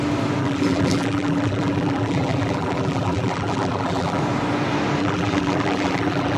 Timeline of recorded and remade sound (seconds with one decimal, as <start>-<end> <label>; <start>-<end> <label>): 0.0-0.4 recorded; 0.4-4.2 remade; 4.2-5.0 recorded; 5.0-6.4 remade